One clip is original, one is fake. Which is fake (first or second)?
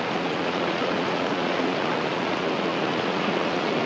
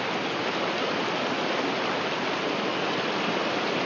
first